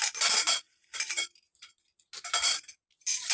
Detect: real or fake real